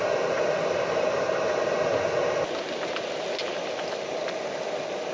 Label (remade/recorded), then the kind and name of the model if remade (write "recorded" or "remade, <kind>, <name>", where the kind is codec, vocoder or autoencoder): recorded